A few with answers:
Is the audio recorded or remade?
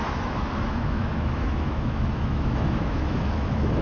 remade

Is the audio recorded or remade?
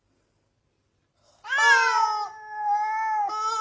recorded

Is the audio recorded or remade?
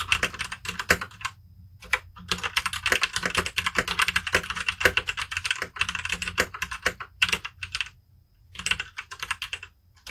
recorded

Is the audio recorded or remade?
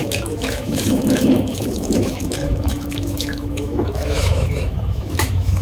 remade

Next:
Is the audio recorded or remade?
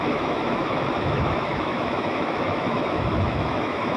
remade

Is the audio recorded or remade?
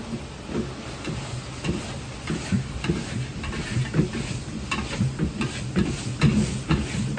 recorded